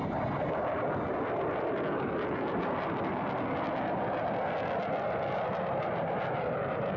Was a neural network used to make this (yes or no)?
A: no